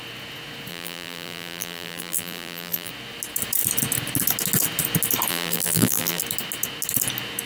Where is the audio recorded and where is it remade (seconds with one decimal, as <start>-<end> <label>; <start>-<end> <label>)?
0.0-0.7 recorded; 0.7-2.9 remade; 2.9-5.3 recorded; 5.3-6.2 remade; 6.2-7.5 recorded